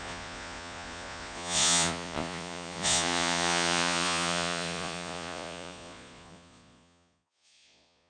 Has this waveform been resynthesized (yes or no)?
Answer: yes